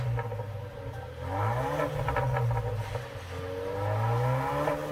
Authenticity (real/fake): real